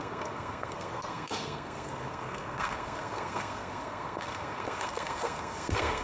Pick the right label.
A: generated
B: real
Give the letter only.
A